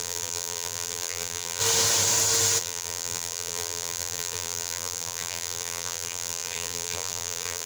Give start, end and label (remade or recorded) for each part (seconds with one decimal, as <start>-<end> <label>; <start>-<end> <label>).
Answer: 0.0-1.6 remade; 1.6-2.6 recorded; 2.6-7.7 remade